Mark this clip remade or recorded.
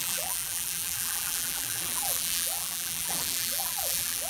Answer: remade